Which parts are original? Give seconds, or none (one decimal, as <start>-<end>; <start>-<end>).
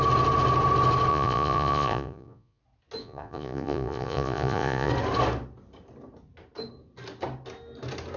0.0-1.1; 2.6-3.0; 4.9-8.2